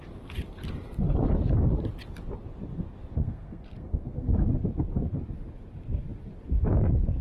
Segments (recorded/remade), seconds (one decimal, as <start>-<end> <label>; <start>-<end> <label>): 0.0-3.2 recorded; 3.2-4.3 remade; 4.3-7.2 recorded